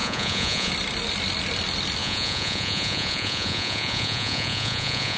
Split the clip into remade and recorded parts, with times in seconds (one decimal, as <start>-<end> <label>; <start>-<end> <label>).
0.0-0.7 remade; 0.7-2.0 recorded; 2.0-5.2 remade